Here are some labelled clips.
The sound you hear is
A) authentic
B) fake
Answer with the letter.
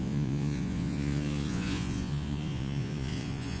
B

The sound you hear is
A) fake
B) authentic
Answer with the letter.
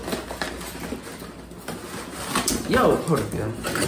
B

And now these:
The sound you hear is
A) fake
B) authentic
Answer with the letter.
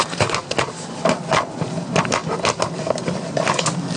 B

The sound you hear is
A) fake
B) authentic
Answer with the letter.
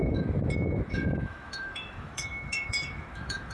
A